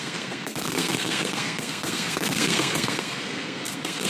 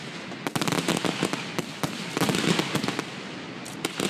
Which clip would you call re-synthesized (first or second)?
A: first